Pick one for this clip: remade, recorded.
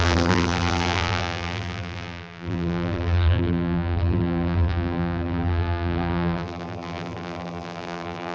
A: remade